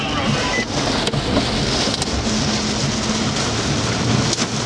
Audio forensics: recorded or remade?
recorded